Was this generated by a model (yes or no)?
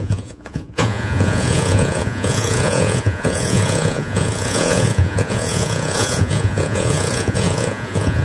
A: yes